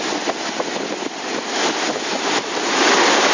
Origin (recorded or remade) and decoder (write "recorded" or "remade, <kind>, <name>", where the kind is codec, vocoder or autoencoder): recorded